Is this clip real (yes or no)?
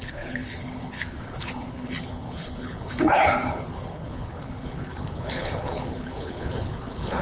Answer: no